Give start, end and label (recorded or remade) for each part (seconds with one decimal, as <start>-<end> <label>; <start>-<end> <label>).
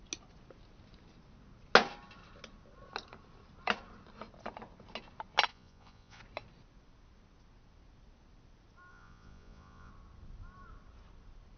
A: 0.0-5.5 recorded; 5.5-6.2 remade; 6.2-8.9 recorded; 8.9-9.9 remade; 9.9-11.6 recorded